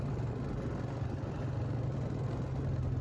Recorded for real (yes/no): yes